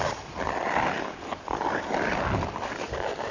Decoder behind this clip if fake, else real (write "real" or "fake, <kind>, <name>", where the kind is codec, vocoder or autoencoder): real